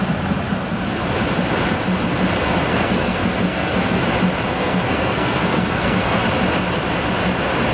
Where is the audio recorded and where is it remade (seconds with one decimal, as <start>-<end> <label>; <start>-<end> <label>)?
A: 0.0-2.7 recorded; 2.7-4.0 remade; 4.0-4.5 recorded; 4.5-6.2 remade; 6.2-7.7 recorded